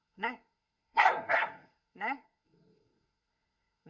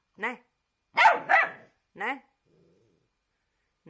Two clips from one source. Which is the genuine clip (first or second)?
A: second